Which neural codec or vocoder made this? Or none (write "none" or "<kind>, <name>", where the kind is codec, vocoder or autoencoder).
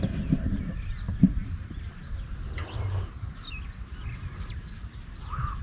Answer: none